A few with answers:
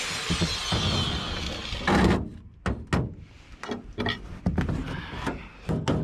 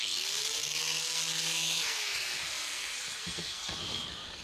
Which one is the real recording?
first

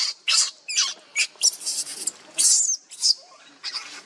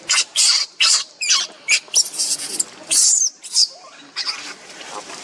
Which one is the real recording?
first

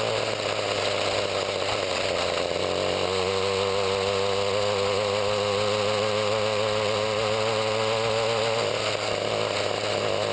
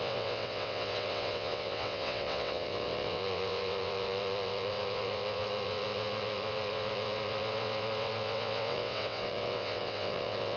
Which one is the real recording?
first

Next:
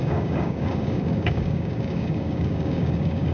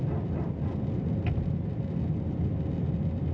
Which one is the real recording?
second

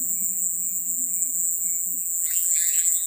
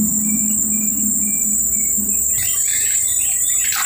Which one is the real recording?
second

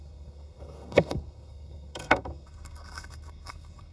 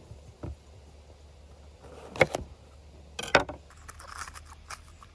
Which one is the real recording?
second